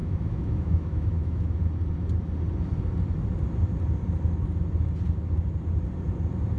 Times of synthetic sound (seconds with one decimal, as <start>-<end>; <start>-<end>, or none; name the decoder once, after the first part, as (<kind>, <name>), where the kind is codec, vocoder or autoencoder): 0.0-1.6 (autoencoder, DAC-VAE)